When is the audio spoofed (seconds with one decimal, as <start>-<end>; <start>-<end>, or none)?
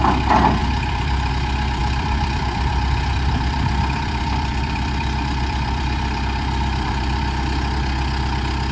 0.6-1.3; 1.8-2.7; 3.1-7.2